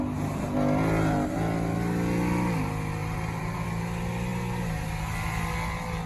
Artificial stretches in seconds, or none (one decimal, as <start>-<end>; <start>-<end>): 3.0-3.8